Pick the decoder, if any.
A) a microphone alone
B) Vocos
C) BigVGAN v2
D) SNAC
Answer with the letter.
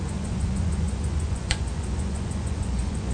B